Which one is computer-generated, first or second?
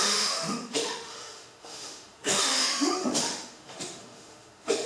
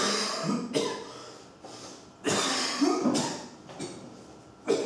first